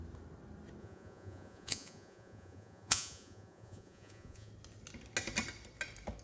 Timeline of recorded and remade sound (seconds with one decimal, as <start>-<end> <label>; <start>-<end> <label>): 0.0-0.8 recorded; 0.8-4.5 remade; 4.5-6.2 recorded